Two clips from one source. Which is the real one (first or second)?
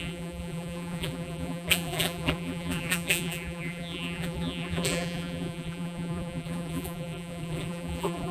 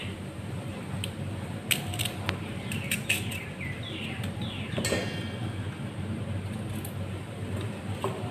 second